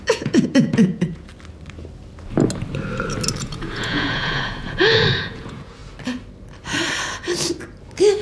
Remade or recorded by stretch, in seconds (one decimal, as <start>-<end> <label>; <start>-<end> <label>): 0.0-1.3 remade; 1.3-3.4 recorded; 3.4-5.8 remade; 5.8-8.2 recorded